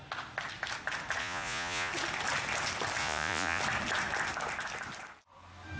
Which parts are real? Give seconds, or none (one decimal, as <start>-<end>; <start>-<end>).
0.0-1.2; 1.9-3.0; 3.6-5.8